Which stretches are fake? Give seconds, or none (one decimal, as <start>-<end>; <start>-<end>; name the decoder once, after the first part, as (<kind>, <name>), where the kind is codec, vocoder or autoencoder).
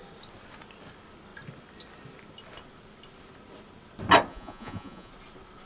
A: 4.3-5.1 (vocoder, Vocos)